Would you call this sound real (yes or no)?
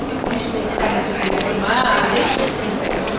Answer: yes